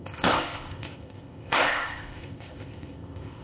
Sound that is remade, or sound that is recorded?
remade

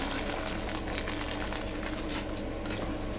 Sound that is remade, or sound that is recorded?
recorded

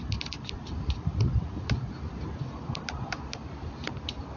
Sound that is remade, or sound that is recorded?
recorded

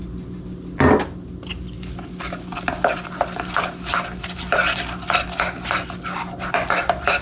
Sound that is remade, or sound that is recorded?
recorded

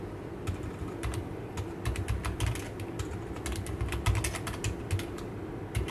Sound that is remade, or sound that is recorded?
recorded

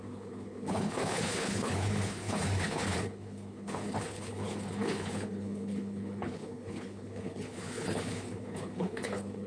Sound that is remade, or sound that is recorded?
remade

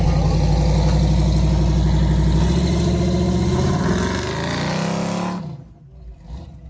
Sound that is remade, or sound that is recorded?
recorded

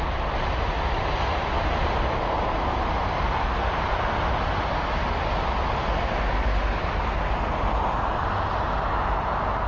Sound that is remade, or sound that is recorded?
recorded